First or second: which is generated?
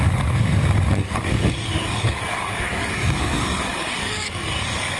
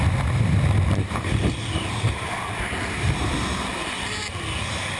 first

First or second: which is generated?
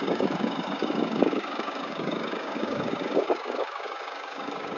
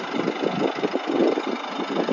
first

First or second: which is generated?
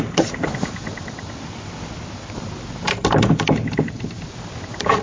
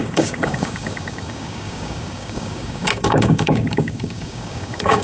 second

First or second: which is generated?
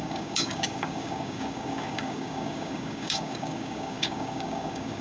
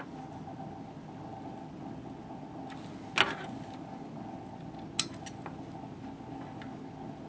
first